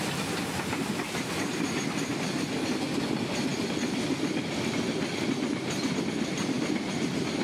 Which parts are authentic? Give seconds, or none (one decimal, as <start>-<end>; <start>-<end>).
0.0-7.4